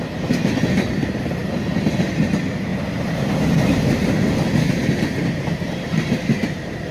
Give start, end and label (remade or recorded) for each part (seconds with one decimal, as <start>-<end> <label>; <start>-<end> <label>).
0.0-2.7 recorded; 2.7-6.9 remade